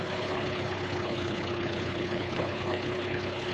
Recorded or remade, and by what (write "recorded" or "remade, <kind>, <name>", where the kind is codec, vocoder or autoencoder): remade, codec, HILCodec